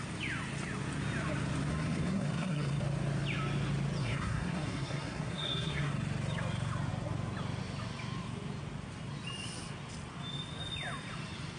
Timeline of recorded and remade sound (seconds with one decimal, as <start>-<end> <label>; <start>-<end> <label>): 0.0-1.7 recorded; 1.7-2.8 remade; 2.8-4.0 recorded; 4.0-5.9 remade; 5.9-11.6 recorded